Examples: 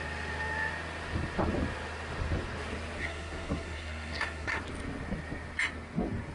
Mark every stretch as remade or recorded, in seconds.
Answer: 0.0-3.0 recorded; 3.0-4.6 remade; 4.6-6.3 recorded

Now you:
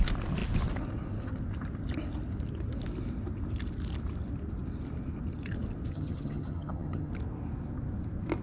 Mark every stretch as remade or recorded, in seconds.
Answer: 0.0-5.9 recorded; 5.9-7.1 remade; 7.1-8.4 recorded

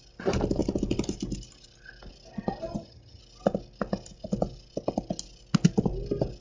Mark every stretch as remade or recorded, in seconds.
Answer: 0.0-2.7 recorded; 2.7-3.2 remade; 3.2-6.4 recorded

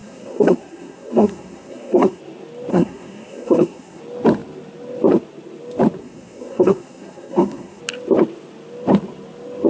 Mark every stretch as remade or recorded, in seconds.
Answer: 0.0-2.2 remade; 2.2-2.7 recorded; 2.7-4.0 remade; 4.0-6.0 recorded; 6.0-7.8 remade; 7.8-9.7 recorded

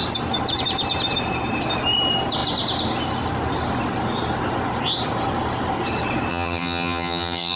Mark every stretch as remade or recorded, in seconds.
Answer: 0.0-6.3 recorded; 6.3-7.6 remade

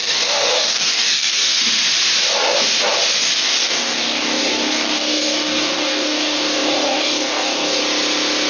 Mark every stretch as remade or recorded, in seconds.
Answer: 0.0-1.6 remade; 1.6-3.2 recorded; 3.2-7.8 remade; 7.8-8.5 recorded